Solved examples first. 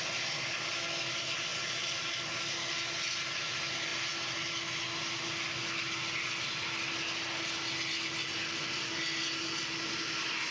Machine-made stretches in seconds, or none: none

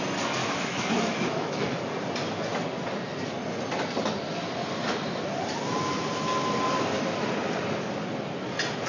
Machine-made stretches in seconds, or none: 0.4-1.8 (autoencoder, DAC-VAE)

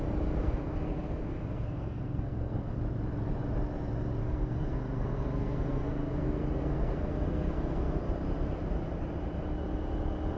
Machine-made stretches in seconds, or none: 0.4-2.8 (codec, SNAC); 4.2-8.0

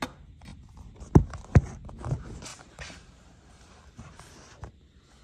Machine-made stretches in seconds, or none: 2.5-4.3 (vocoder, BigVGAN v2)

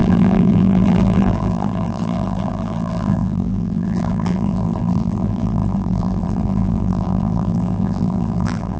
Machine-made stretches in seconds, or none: 0.0-8.8 (vocoder, BigVGAN v2)

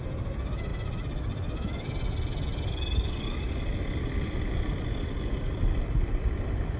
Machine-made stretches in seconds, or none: none